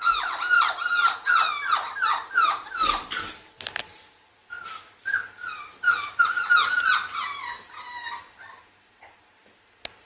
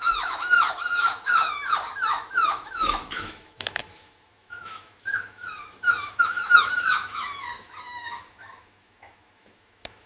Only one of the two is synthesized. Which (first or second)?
second